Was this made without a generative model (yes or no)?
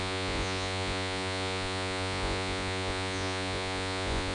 no